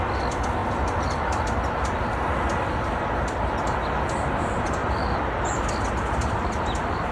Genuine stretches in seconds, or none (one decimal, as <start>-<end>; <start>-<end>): 0.0-7.1